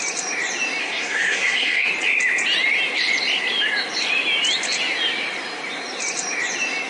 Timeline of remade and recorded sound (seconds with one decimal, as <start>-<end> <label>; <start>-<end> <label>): 0.0-0.8 recorded; 0.8-1.9 remade; 1.9-6.9 recorded